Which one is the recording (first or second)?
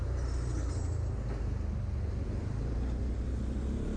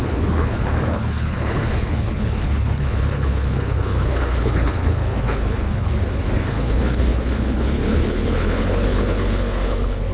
first